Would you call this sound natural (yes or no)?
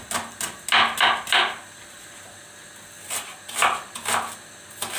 yes